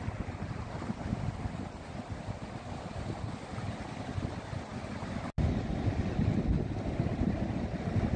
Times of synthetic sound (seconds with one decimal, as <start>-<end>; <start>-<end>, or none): none